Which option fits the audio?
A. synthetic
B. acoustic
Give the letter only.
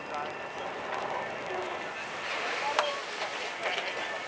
B